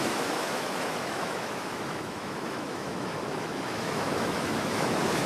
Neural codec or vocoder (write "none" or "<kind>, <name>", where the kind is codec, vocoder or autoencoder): autoencoder, DAC-VAE